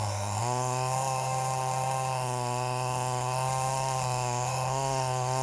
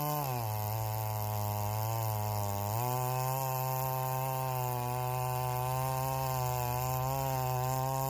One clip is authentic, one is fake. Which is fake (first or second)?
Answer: first